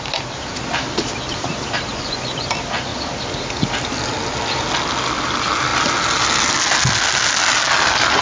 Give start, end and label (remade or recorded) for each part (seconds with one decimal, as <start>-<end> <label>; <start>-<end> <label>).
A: 0.0-1.9 recorded; 1.9-2.5 remade; 2.5-8.2 recorded